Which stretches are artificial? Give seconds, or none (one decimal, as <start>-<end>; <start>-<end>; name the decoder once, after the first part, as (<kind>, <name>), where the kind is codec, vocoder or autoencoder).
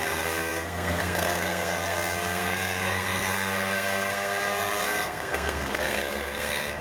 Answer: 0.0-6.8 (codec, SNAC)